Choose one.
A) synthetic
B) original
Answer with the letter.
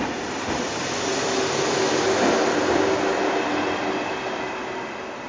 B